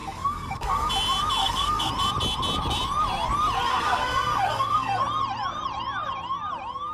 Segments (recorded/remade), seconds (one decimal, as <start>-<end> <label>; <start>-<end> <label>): 0.0-0.9 remade; 0.9-1.4 recorded; 1.4-1.9 remade; 1.9-3.7 recorded; 3.7-5.0 remade; 5.0-6.9 recorded